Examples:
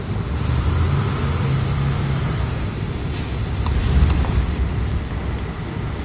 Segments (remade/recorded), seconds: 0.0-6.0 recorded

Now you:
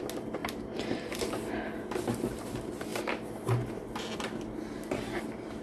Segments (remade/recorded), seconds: 0.0-0.4 recorded; 0.4-1.3 remade; 1.3-5.6 recorded

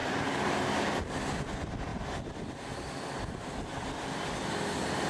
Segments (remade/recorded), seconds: 0.0-0.6 remade; 0.6-5.1 recorded

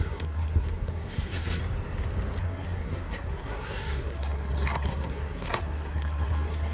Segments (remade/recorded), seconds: 0.0-1.6 remade; 1.6-2.4 recorded; 2.4-6.7 remade

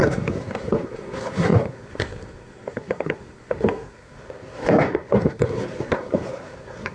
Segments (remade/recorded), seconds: 0.0-6.9 remade

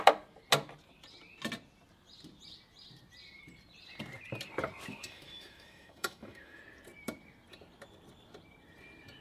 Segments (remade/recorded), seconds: 0.0-4.9 recorded; 4.9-6.6 remade; 6.6-9.2 recorded

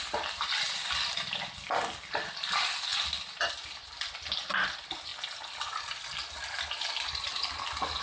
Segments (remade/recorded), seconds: 0.0-8.0 recorded